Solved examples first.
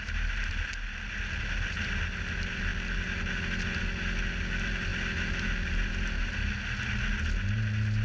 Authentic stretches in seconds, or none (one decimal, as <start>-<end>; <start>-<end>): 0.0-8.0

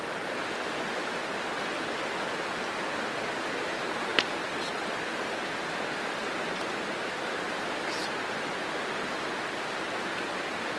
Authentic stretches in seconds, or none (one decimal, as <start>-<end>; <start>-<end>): 0.0-10.8

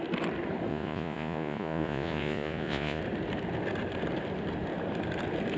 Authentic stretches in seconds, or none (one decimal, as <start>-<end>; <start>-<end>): 0.0-0.7; 3.0-5.6

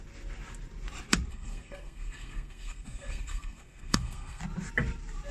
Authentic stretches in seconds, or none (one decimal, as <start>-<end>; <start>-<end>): 0.0-1.3; 4.4-5.3

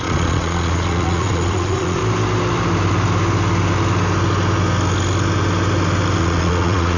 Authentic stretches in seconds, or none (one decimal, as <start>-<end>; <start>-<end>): 2.0-6.2